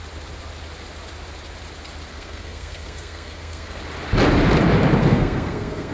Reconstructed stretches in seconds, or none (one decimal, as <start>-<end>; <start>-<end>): 2.1-3.8; 5.0-5.9